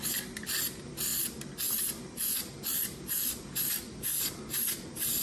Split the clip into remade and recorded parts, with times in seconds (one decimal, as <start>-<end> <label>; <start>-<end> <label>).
0.0-5.2 recorded

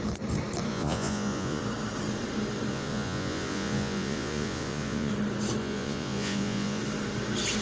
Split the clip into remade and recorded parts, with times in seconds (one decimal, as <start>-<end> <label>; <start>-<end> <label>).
0.0-0.7 recorded; 0.7-1.6 remade; 1.6-2.7 recorded; 2.7-5.1 remade; 5.1-5.6 recorded; 5.6-6.8 remade; 6.8-7.6 recorded

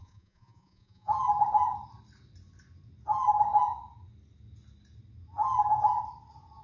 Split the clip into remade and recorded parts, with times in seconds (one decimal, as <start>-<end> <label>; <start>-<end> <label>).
0.0-1.1 remade; 1.1-6.6 recorded